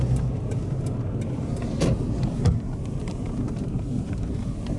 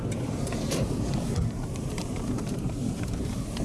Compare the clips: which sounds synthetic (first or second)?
second